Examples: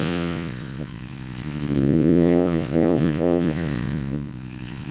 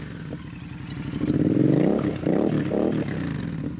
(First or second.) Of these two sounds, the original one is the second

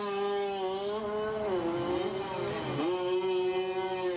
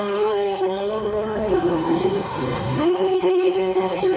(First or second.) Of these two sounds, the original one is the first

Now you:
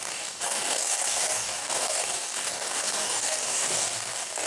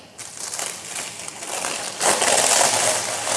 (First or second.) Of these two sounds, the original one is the second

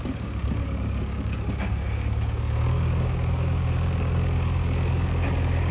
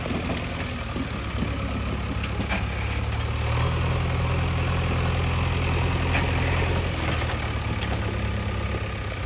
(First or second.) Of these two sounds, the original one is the second